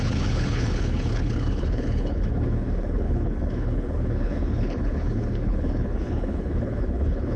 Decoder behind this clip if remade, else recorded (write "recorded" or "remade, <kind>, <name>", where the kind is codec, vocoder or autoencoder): remade, codec, HILCodec